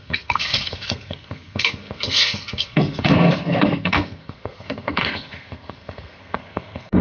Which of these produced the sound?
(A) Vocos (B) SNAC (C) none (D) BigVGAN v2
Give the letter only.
B